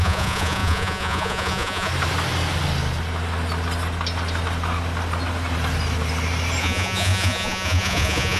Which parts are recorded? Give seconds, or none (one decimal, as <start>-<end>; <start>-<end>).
1.9-6.6